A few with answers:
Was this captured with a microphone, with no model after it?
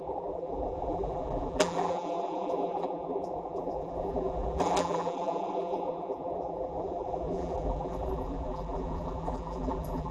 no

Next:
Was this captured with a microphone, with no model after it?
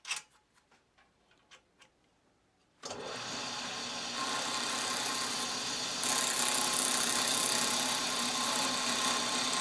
yes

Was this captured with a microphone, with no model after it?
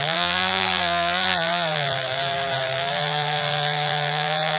no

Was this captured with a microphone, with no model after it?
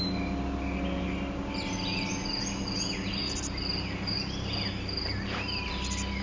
yes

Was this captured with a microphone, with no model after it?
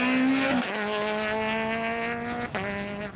yes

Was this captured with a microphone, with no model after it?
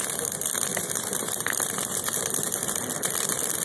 no